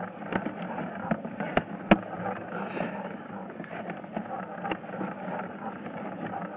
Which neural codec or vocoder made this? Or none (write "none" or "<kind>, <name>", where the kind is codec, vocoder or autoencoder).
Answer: none